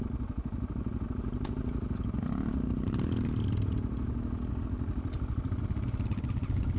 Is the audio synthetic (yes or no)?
no